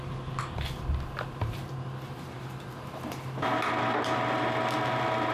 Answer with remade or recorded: recorded